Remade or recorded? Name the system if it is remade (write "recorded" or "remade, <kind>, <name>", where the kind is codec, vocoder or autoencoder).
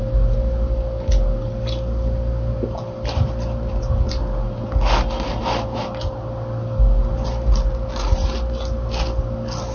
recorded